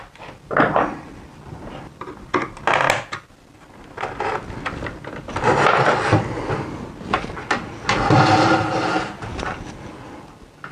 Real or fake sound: real